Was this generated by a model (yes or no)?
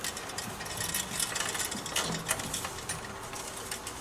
no